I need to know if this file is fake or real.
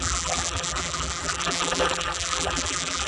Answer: fake